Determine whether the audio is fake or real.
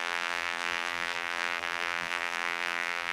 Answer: fake